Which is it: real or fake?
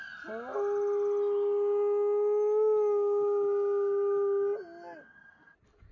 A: real